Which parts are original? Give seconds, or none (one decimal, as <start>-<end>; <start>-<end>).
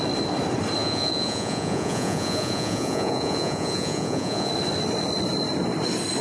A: 0.0-0.8; 4.5-6.2